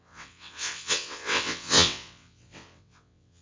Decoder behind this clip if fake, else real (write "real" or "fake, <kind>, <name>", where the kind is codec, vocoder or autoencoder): fake, vocoder, WaveNeXt